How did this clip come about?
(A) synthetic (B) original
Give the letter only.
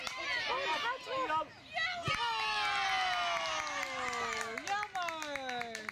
B